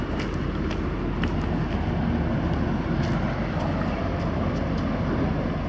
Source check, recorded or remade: recorded